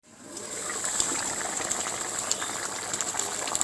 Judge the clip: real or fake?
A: fake